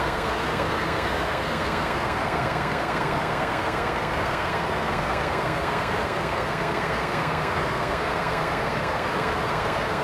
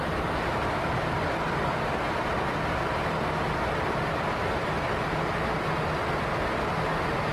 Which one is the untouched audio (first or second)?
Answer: second